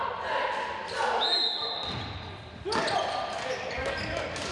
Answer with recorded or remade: recorded